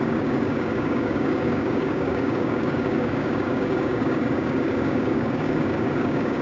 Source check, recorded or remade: remade